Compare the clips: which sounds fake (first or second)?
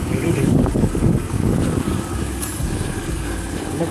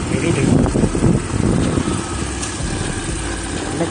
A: first